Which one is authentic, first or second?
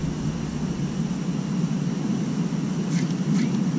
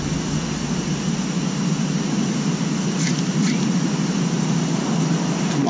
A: second